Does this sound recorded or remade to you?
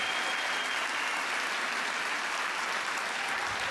recorded